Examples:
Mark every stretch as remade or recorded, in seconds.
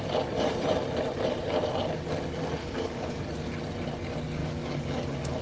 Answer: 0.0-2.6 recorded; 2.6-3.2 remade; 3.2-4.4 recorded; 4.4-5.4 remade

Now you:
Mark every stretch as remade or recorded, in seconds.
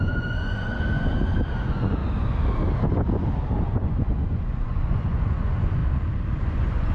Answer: 0.0-2.0 remade; 2.0-3.6 recorded; 3.6-5.8 remade; 5.8-6.4 recorded; 6.4-6.9 remade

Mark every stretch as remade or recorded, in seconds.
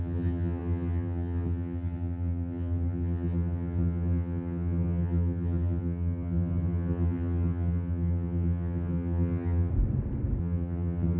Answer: 0.0-9.7 remade; 9.7-10.4 recorded; 10.4-11.2 remade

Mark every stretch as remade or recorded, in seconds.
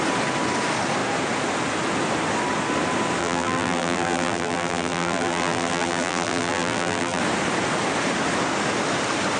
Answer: 0.0-3.2 recorded; 3.2-7.2 remade; 7.2-9.4 recorded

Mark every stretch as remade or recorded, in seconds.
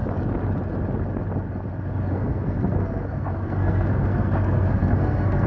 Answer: 0.0-2.1 recorded; 2.1-5.5 remade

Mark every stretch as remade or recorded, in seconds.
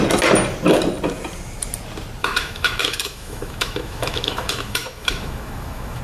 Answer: 0.0-2.2 recorded; 2.2-6.0 remade